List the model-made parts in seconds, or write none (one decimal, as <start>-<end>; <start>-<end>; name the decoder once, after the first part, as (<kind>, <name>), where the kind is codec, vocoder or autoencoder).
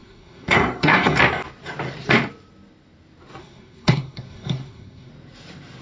0.0-1.2 (codec, SNAC); 3.4-5.1